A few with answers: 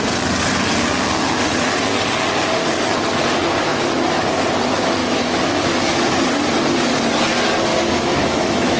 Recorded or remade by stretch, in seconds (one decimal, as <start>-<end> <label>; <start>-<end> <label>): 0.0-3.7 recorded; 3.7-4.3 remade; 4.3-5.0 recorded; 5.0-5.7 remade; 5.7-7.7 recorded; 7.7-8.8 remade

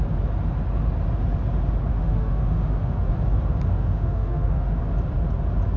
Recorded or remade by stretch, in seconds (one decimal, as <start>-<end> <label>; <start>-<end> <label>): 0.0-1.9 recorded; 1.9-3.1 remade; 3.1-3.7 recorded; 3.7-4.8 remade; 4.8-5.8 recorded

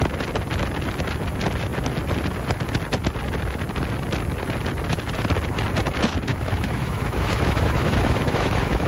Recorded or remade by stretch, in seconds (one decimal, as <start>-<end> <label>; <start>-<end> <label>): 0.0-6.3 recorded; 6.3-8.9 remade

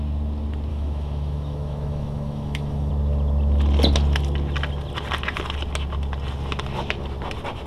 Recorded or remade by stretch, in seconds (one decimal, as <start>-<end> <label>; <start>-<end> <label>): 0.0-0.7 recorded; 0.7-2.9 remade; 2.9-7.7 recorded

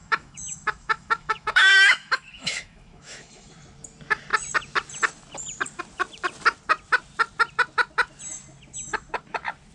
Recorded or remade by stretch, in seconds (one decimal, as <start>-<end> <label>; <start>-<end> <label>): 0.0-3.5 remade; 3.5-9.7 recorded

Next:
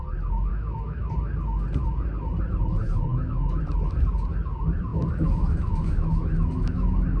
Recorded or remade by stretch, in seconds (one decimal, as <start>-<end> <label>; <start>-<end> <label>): 0.0-0.5 recorded; 0.5-1.1 remade; 1.1-3.1 recorded; 3.1-3.6 remade; 3.6-4.9 recorded; 4.9-7.2 remade